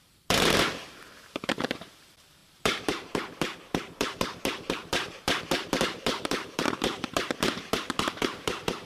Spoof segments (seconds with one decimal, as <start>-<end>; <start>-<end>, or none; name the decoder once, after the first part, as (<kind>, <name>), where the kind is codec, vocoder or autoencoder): 0.0-8.9 (vocoder, BigVGAN v2)